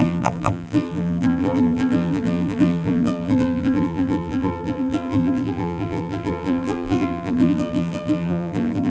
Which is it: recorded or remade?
remade